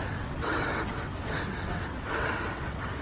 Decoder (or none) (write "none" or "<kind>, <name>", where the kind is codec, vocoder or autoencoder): vocoder, WaveNeXt